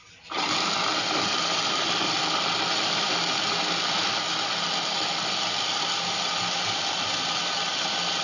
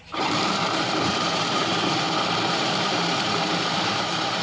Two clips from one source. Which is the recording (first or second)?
first